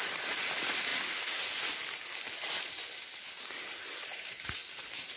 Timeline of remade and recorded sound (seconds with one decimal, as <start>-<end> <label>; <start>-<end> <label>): 0.0-5.2 recorded